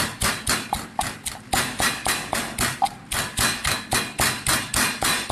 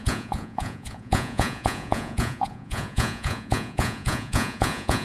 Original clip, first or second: first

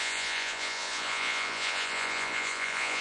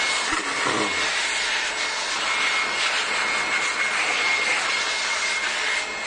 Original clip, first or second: second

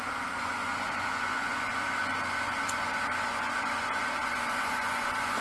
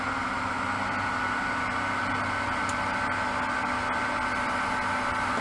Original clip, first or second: second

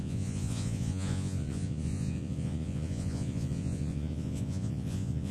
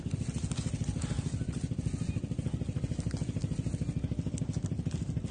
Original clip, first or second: second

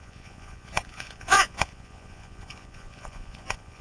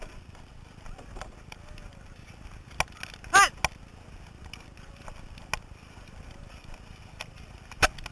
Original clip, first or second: second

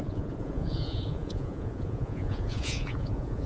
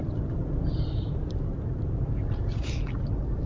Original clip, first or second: second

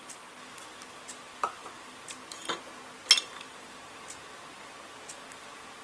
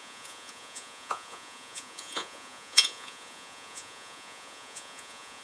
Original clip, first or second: first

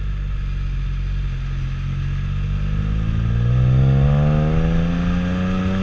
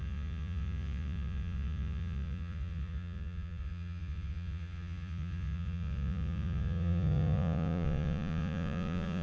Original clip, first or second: first